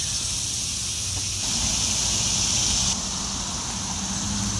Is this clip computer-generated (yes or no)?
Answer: no